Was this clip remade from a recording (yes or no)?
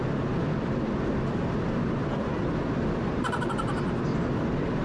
yes